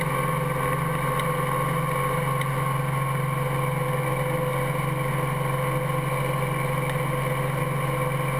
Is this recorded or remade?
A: recorded